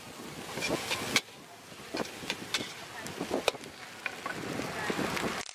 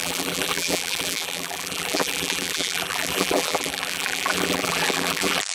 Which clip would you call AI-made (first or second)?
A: second